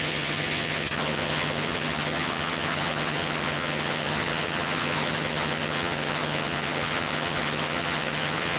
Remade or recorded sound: remade